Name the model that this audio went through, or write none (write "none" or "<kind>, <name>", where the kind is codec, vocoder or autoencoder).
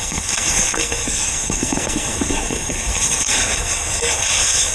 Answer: codec, SNAC